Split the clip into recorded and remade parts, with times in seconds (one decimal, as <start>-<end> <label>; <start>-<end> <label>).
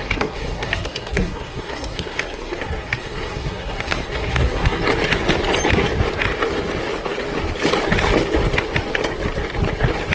0.0-4.8 remade; 4.8-10.1 recorded